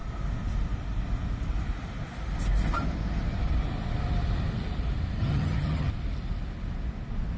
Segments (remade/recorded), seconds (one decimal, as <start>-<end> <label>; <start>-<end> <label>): 0.0-5.2 recorded; 5.2-5.9 remade; 5.9-7.4 recorded